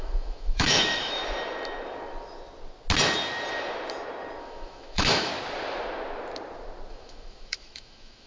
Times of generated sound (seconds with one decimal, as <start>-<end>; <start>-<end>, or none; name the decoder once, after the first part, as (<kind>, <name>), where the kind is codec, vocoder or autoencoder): 0.0-1.2 (autoencoder, DAC-VAE); 4.4-5.3; 6.9-8.3